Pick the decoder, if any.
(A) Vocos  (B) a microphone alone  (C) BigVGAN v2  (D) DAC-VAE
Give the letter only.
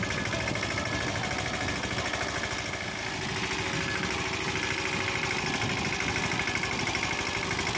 B